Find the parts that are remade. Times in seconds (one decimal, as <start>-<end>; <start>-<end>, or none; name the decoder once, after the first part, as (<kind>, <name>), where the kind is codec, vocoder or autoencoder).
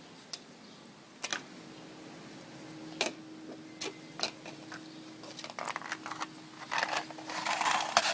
none